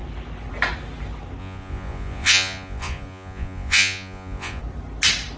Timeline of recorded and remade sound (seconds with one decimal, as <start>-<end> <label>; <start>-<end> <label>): 0.0-1.4 recorded; 1.4-4.6 remade; 4.6-5.4 recorded